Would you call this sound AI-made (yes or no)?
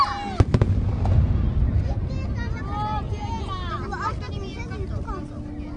no